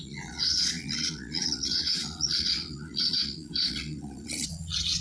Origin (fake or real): fake